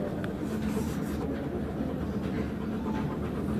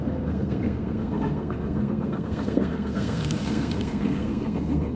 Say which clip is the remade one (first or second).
second